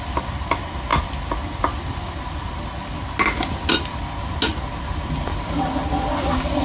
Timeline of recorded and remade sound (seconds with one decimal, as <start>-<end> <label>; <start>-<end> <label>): 0.0-6.6 recorded

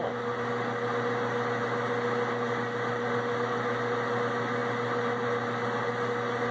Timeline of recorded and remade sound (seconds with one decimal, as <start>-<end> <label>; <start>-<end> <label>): 0.0-6.5 recorded

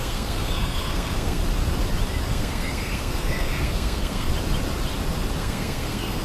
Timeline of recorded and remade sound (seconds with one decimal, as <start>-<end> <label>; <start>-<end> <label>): 0.0-1.4 remade; 1.4-2.3 recorded; 2.3-4.3 remade; 4.3-5.4 recorded; 5.4-6.2 remade

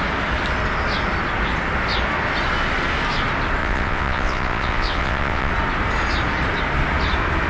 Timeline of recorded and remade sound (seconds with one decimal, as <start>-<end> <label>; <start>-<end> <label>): 0.0-3.6 recorded; 3.6-5.5 remade; 5.5-7.5 recorded